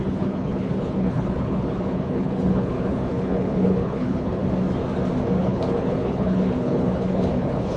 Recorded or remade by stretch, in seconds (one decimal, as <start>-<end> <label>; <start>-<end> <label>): 0.0-4.4 remade; 4.4-5.4 recorded; 5.4-7.8 remade